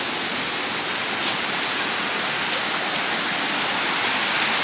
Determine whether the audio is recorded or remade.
recorded